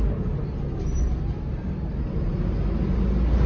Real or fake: real